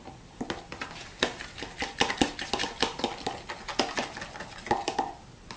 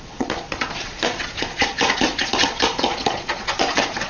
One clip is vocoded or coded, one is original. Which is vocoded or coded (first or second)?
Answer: second